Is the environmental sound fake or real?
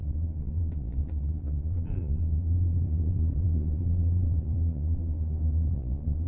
fake